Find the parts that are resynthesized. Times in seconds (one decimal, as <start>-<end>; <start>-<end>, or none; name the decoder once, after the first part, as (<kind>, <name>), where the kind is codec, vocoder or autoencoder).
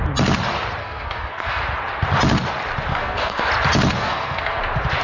0.8-1.6 (codec, SNAC); 2.9-3.5; 4.0-4.6